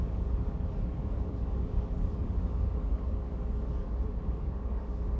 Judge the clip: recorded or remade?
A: remade